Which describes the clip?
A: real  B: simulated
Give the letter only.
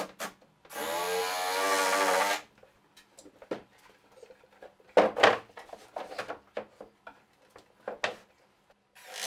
A